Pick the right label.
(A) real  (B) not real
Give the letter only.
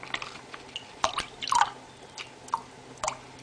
A